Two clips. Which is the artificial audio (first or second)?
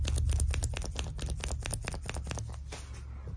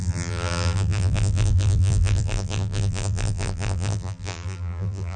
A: second